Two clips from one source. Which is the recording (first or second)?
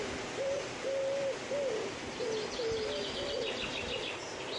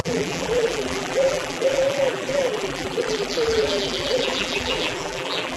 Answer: first